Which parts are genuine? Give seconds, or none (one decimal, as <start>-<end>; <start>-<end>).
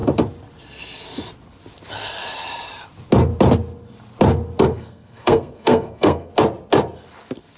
0.0-4.7; 6.3-7.6